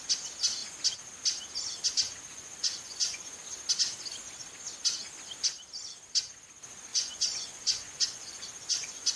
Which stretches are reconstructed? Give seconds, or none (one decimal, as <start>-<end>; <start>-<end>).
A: 2.3-3.4; 6.9-9.2